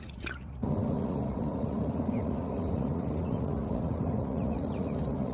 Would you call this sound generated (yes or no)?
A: yes